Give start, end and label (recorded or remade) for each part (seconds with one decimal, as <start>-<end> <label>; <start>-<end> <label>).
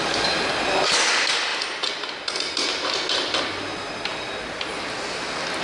0.0-5.6 recorded